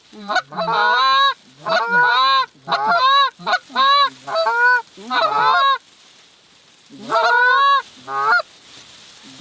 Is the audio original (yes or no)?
yes